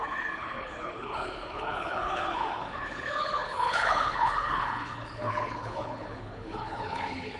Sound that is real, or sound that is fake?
fake